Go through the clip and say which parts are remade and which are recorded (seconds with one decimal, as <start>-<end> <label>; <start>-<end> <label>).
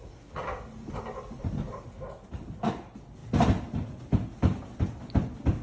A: 0.0-5.6 recorded